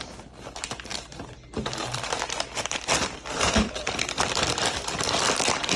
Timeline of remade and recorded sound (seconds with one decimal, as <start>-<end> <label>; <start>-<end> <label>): 0.0-0.9 remade; 0.9-1.5 recorded; 1.5-5.8 remade